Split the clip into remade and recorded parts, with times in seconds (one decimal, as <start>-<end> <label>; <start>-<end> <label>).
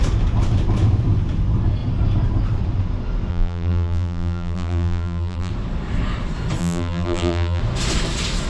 0.0-3.3 recorded; 3.3-5.5 remade; 5.5-6.6 recorded; 6.6-7.6 remade; 7.6-8.5 recorded